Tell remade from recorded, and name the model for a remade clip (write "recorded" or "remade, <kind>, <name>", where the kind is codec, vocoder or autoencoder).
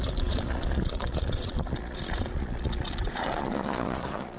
remade, vocoder, Vocos